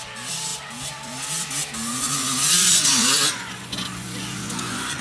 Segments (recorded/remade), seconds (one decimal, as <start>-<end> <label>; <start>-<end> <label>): 0.0-1.9 recorded; 1.9-5.0 remade